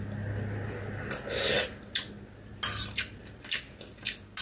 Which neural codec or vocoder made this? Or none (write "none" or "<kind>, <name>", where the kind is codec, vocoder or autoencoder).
none